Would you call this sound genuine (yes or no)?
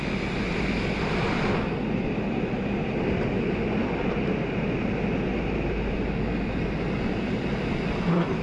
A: yes